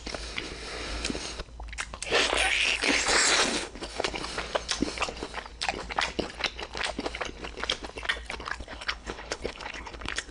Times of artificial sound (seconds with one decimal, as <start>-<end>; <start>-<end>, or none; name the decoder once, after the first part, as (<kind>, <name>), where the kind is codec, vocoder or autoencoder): 3.5-4.1 (codec, HILCodec); 8.6-10.3